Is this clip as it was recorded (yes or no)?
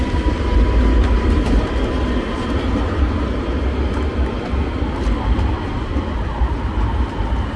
yes